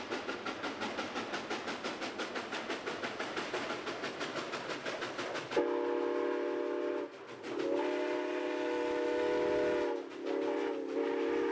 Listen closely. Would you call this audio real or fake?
real